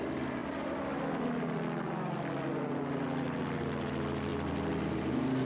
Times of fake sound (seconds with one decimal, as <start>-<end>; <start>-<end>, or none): none